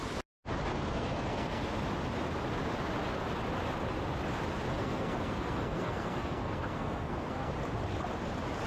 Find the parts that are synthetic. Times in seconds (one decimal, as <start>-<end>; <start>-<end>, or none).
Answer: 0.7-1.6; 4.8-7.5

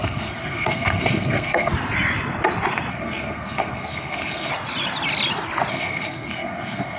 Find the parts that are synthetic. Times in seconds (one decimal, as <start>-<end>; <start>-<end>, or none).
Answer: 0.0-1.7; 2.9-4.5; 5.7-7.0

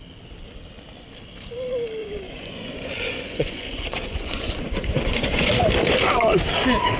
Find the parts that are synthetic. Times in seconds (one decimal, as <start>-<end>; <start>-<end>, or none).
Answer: 2.0-5.5

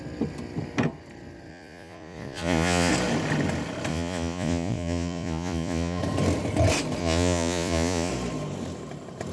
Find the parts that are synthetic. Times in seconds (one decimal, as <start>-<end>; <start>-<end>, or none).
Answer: 1.5-2.9; 3.9-6.0; 7.0-8.1

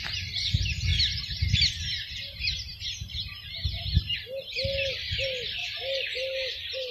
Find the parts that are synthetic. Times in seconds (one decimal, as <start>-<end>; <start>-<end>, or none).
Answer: 5.6-6.2

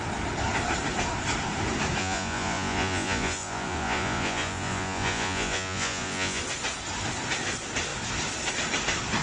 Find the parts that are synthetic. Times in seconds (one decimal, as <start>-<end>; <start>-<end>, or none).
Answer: 2.0-6.4

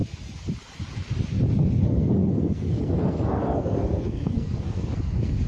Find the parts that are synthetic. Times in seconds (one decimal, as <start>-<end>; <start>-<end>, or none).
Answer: 1.8-5.5

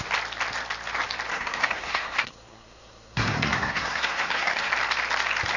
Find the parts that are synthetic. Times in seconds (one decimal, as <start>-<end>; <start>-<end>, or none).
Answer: 1.3-4.7